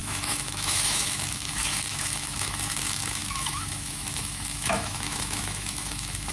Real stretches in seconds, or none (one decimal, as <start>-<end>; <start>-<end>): none